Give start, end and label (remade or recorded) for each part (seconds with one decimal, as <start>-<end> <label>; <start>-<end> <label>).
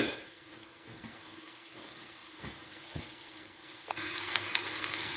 0.0-5.2 remade